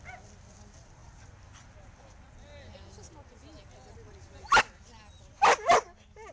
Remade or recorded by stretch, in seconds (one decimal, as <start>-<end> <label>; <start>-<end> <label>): 0.0-6.3 recorded